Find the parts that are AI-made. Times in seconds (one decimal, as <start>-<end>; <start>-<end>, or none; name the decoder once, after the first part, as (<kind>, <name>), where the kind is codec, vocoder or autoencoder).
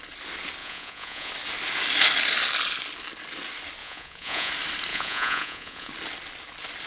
0.6-1.3 (vocoder, Vocos); 3.8-4.5; 4.9-5.9